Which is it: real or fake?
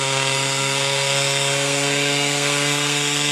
fake